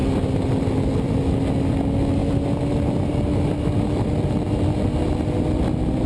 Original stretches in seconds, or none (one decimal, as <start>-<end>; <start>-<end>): 0.0-6.1